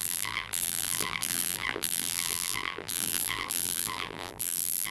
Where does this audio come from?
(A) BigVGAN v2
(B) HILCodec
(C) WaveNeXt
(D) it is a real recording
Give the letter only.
A